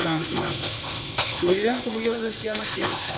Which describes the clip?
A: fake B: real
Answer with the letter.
A